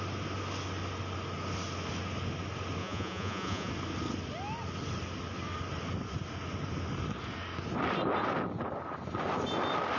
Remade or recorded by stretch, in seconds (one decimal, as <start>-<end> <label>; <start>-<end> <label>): 0.0-2.8 recorded; 2.8-3.7 remade; 3.7-10.0 recorded